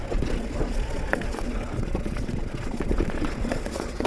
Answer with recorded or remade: remade